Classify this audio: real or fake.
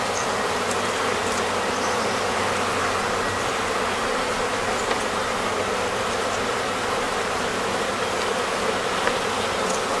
real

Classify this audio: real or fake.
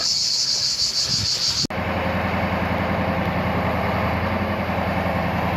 real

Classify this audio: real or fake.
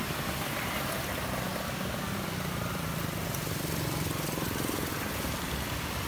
fake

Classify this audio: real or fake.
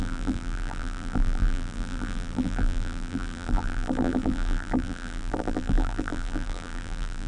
fake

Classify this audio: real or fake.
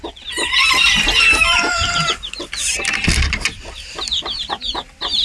fake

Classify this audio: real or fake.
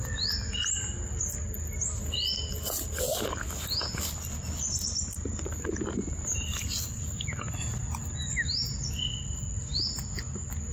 real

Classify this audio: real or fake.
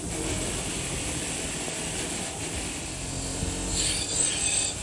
real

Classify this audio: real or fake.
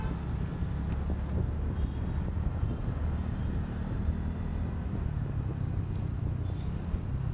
real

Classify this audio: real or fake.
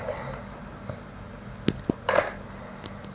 real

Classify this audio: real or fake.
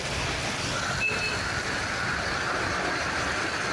real